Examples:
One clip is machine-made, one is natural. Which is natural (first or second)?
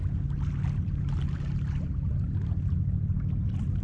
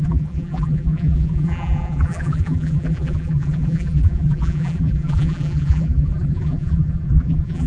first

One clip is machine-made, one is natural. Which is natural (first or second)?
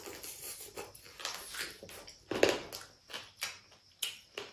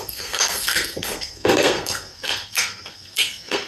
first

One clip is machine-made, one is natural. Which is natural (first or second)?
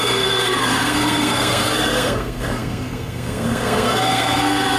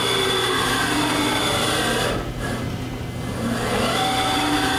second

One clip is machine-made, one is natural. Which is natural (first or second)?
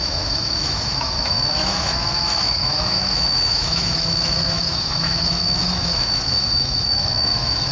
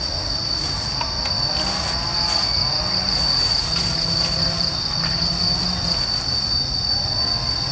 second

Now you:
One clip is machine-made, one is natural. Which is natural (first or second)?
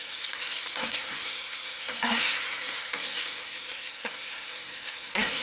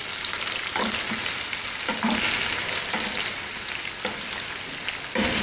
second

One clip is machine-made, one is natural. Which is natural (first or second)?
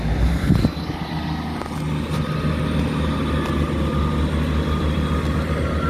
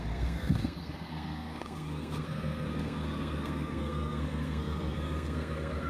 first